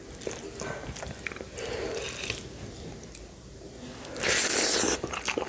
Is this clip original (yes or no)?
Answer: yes